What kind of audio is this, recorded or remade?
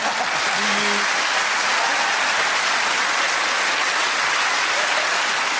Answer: recorded